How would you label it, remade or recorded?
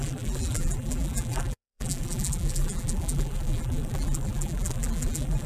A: remade